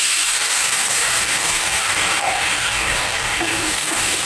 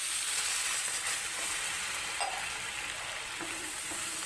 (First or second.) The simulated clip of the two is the first